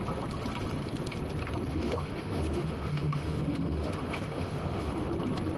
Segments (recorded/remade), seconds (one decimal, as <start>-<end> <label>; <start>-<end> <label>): 0.0-1.7 recorded; 1.7-5.1 remade; 5.1-5.6 recorded